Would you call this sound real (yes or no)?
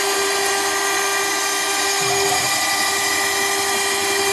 yes